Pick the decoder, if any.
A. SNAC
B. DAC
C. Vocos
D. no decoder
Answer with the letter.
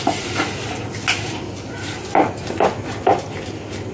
D